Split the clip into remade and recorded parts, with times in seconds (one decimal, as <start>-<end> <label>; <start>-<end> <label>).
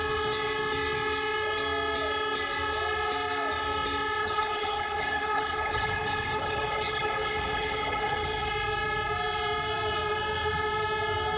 0.0-4.2 recorded; 4.2-8.5 remade; 8.5-11.4 recorded